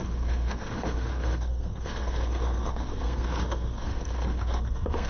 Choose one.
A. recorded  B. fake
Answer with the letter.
B